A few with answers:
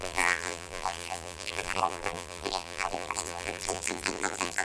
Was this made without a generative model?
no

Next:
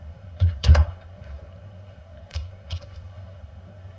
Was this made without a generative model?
no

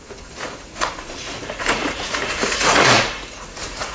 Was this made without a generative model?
no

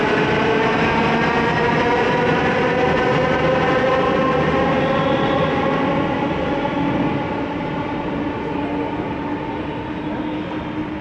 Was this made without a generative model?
yes